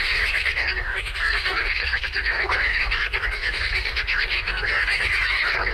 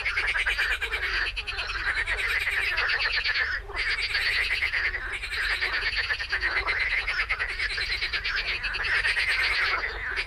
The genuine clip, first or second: second